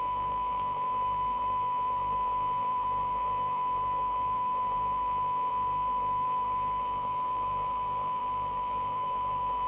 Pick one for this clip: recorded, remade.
remade